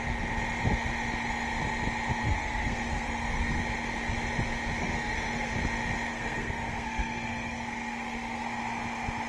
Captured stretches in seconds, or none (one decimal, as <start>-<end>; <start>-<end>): 0.0-2.2; 3.6-4.8; 5.5-6.1; 8.6-9.3